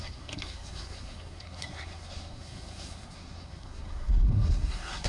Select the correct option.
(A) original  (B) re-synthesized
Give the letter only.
B